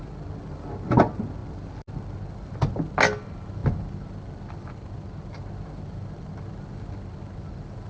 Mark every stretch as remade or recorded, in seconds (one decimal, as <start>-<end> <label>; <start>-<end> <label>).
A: 0.0-7.9 recorded